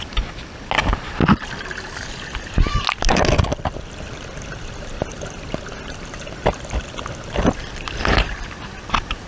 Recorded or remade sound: recorded